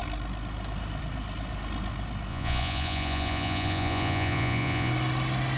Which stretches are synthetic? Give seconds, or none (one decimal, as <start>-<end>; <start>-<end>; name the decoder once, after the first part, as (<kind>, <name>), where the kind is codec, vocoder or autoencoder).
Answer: 2.3-4.9 (vocoder, Vocos)